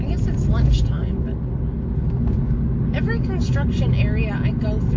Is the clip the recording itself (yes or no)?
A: yes